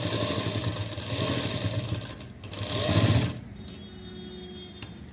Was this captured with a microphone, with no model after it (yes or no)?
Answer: yes